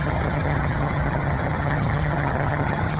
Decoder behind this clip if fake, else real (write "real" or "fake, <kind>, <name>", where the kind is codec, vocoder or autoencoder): fake, vocoder, HiFi-GAN